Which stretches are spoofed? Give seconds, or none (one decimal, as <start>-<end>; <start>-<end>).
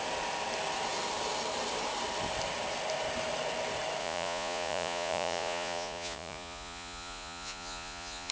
4.0-8.3